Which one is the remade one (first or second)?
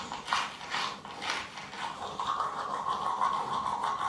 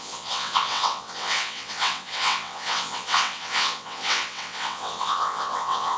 second